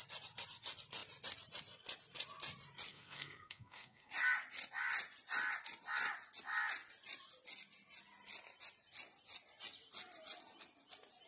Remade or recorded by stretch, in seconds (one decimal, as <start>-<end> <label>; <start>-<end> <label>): 0.0-2.9 recorded; 2.9-4.1 remade; 4.1-11.3 recorded